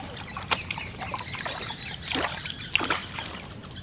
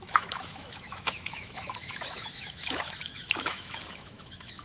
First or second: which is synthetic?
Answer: second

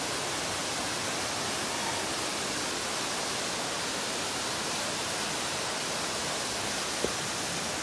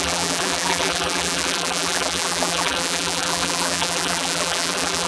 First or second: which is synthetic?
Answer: second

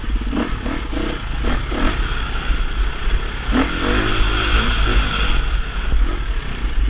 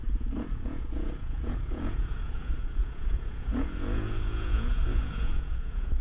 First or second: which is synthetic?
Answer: second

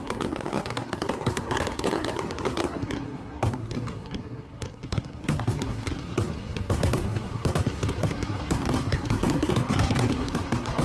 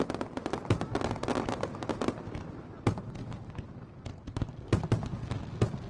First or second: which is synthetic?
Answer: first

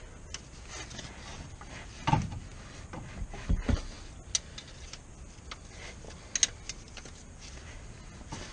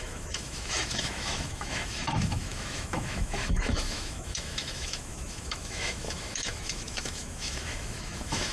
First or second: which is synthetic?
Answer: second